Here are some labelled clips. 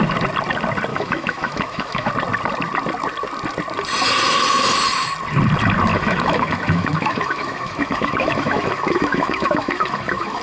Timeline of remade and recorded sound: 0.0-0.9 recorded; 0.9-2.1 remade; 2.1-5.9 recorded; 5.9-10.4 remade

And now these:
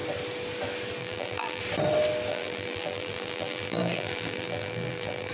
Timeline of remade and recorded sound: 0.0-1.0 recorded; 1.0-1.6 remade; 1.6-2.3 recorded; 2.3-5.3 remade